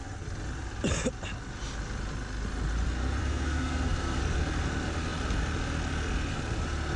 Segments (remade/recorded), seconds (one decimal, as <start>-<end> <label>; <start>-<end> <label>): 0.0-3.2 recorded; 3.2-4.2 remade; 4.2-7.0 recorded